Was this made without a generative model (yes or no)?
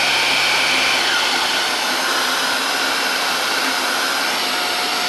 yes